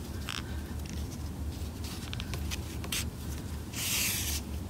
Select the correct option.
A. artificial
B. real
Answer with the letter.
A